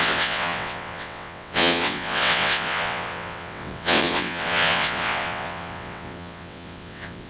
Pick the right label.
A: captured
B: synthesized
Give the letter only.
B